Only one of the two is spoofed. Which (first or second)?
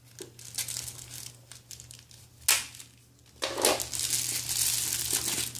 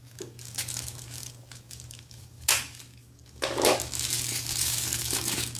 second